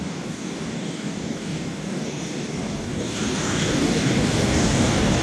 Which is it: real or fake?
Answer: fake